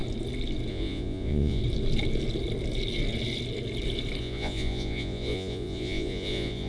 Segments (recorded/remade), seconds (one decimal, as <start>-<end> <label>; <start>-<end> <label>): 0.0-0.7 recorded; 0.7-1.6 remade; 1.6-4.2 recorded; 4.2-6.7 remade